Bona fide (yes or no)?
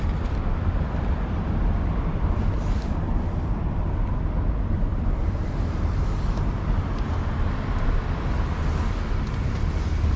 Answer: yes